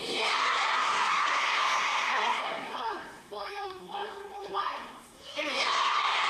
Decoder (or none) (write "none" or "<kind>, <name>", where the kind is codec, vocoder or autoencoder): codec, SNAC